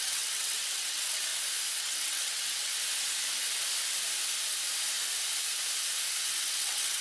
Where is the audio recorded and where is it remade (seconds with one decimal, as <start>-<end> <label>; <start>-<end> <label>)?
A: 0.0-1.3 remade; 1.3-1.8 recorded; 1.8-2.7 remade; 2.7-6.3 recorded; 6.3-7.0 remade